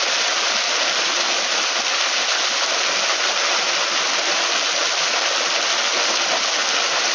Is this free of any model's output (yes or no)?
yes